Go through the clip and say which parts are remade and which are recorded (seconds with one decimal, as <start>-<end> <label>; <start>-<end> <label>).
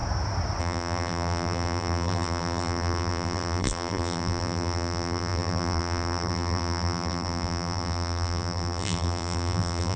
0.0-0.6 recorded; 0.6-10.0 remade